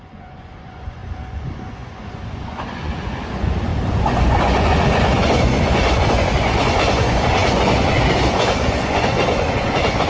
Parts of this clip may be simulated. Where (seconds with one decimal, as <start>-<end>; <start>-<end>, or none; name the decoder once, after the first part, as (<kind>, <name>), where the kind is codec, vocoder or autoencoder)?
0.0-10.1 (vocoder, Vocos)